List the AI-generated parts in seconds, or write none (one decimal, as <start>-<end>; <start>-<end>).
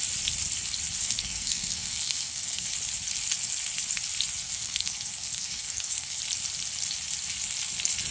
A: 1.0-2.7; 4.4-6.2